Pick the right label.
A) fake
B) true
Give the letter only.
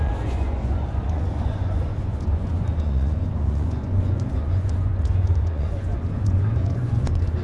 A